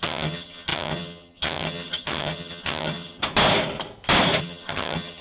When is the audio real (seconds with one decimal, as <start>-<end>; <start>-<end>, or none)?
3.2-4.4